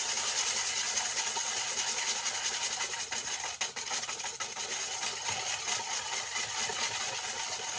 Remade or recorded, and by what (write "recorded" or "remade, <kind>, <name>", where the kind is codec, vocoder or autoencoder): recorded